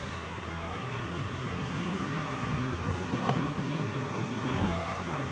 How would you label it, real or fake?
fake